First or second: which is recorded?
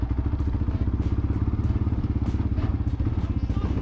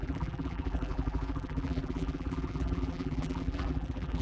first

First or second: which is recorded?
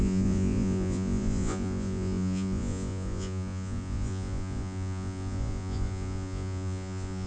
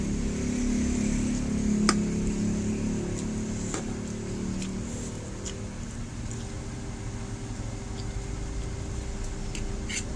second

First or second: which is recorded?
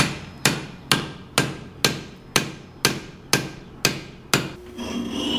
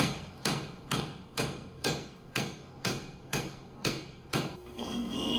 first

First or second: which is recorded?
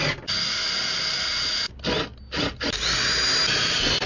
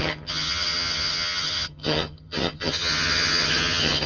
first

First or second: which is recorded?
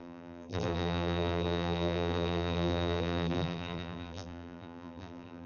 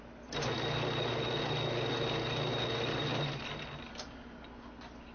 second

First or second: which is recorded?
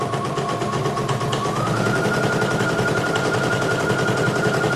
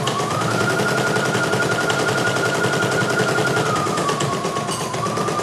first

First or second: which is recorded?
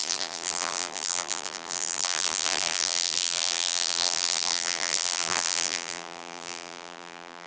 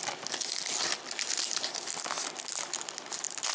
second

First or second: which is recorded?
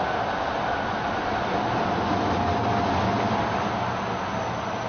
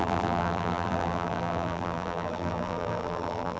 first